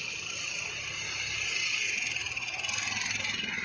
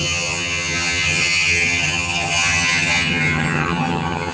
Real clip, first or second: first